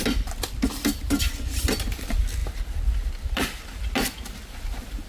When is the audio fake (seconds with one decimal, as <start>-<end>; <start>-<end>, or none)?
none